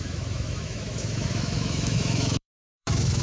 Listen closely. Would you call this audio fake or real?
fake